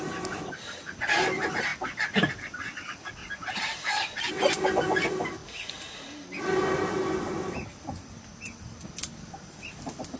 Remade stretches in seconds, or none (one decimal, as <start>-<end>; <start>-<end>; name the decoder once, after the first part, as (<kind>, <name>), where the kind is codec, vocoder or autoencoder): 3.2-4.3 (vocoder, BigVGAN v2)